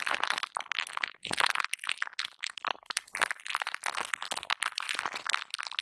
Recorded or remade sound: recorded